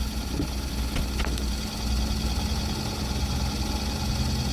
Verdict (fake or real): real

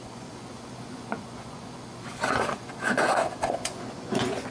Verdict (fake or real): fake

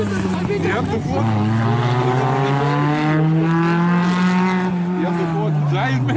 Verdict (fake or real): real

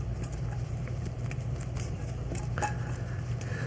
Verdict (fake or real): real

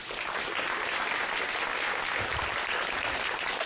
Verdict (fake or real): real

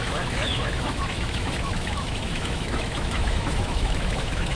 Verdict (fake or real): fake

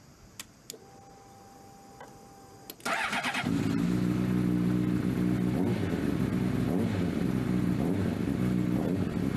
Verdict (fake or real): real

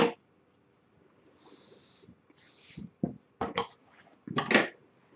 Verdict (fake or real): real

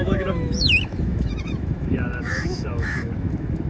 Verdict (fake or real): fake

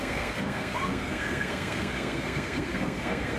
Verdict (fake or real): fake